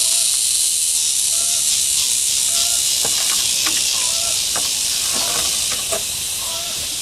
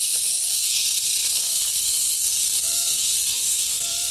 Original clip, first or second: first